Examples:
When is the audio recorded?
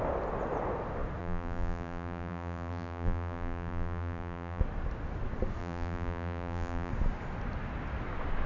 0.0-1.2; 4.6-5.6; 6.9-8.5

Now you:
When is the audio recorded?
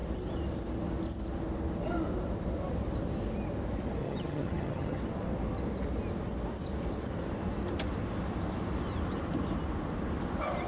0.0-4.0; 5.0-10.7